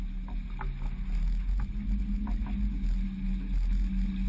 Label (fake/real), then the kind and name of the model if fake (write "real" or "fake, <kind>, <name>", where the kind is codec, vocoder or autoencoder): real